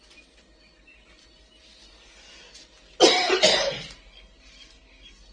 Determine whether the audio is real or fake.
real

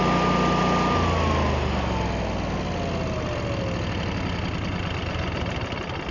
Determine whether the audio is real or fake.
real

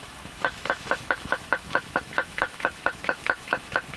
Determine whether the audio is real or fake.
fake